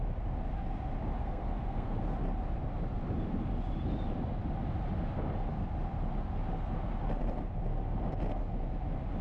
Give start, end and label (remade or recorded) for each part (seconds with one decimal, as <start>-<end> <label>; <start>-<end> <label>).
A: 0.0-1.2 recorded; 1.2-2.0 remade; 2.0-9.2 recorded